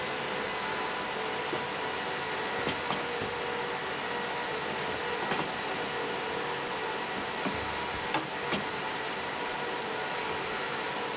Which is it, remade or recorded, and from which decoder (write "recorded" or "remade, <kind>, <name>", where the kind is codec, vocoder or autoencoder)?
recorded